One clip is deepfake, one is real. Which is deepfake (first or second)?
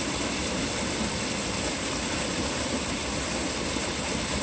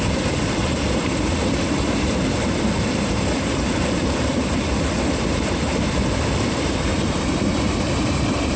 second